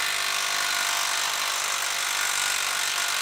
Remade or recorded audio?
recorded